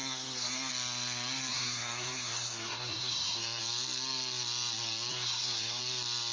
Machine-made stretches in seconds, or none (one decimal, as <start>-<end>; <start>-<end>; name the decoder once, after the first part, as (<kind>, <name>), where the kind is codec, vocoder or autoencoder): 0.0-0.7 (codec, SNAC); 1.5-3.6; 5.1-5.8